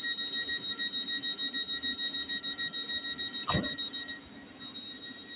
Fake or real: real